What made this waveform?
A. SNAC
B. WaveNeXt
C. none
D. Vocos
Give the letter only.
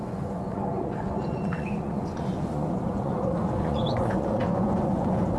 D